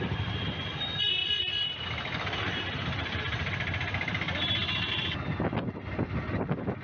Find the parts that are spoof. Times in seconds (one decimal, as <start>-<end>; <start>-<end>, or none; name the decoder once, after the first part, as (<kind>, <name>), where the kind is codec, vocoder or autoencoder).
none